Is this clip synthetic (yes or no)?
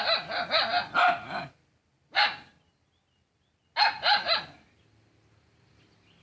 no